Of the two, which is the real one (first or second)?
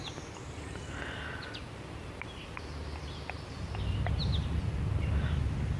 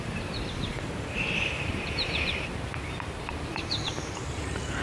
first